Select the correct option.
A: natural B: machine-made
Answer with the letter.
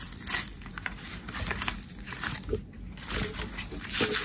A